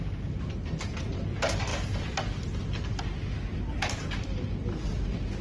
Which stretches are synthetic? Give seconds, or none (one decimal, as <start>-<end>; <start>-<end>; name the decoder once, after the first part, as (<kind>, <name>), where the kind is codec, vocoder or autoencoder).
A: none